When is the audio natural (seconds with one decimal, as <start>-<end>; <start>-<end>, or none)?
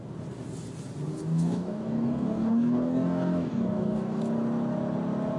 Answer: 0.0-1.1; 4.2-5.4